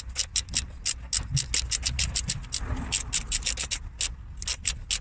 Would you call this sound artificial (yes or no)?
no